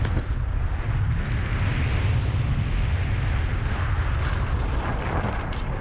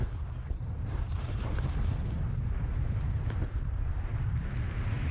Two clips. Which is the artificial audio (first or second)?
second